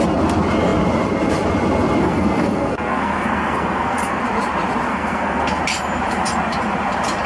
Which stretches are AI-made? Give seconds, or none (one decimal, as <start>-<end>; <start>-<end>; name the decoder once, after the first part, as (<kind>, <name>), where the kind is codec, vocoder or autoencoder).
2.0-4.2 (codec, SNAC); 4.9-5.6